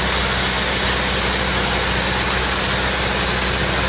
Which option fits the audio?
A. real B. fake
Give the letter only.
A